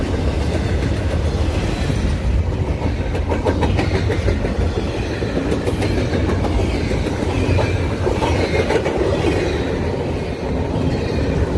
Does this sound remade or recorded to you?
recorded